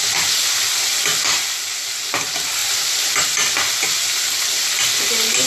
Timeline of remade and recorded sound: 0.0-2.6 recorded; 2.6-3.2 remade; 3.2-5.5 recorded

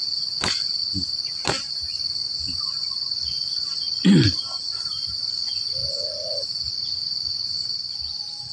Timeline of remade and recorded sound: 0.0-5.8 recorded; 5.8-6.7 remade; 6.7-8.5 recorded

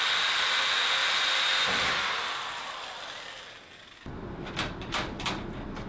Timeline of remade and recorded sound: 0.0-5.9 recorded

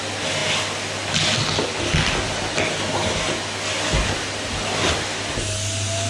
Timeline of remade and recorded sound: 0.0-6.1 recorded

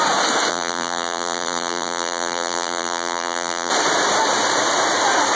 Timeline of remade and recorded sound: 0.0-0.5 recorded; 0.5-3.7 remade; 3.7-5.4 recorded

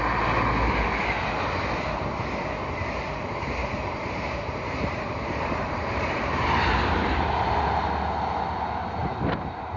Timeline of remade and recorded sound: 0.0-3.6 recorded; 3.6-7.4 remade; 7.4-9.0 recorded; 9.0-9.8 remade

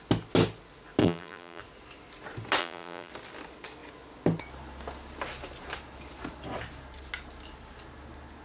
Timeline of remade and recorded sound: 0.0-1.0 recorded; 1.0-1.6 remade; 1.6-2.6 recorded; 2.6-3.1 remade; 3.1-8.4 recorded

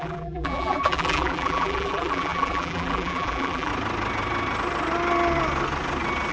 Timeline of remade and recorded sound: 0.0-3.7 remade; 3.7-6.3 recorded